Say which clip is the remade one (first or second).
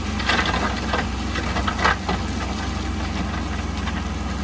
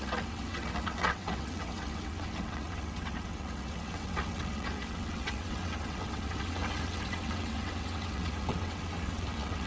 second